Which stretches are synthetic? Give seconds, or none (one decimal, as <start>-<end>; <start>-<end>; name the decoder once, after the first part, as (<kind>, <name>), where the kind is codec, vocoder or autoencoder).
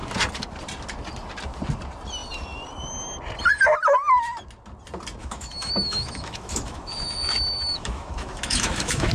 5.2-9.1 (autoencoder, DAC-VAE)